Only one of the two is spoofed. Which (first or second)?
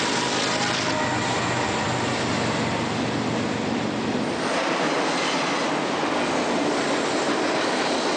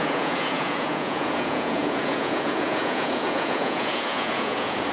second